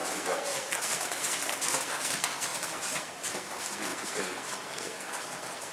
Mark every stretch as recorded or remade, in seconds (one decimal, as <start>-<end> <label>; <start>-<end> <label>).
0.0-5.7 remade